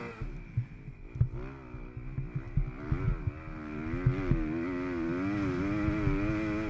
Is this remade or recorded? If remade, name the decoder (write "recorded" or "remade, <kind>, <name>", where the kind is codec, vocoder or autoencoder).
recorded